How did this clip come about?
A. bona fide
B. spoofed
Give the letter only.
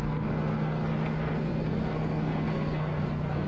B